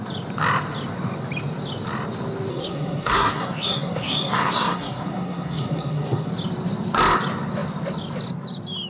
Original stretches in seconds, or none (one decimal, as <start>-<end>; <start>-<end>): 0.0-2.5; 6.3-8.9